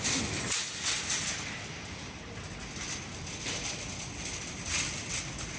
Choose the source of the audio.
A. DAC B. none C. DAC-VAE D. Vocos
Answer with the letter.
B